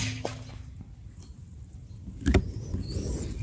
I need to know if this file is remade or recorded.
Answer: recorded